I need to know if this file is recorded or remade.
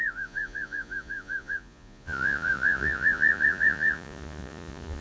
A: remade